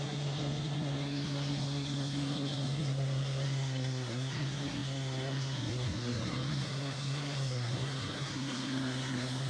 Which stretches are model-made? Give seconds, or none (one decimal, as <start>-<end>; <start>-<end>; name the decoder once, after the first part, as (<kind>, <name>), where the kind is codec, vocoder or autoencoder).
0.0-9.5 (codec, SNAC)